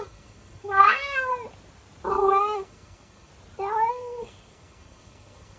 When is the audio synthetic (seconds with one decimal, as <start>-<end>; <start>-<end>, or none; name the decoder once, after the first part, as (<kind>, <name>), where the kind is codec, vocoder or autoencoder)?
0.0-1.3 (codec, SNAC); 2.1-3.3; 3.9-5.6